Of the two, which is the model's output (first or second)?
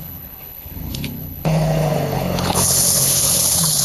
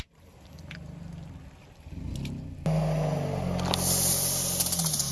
first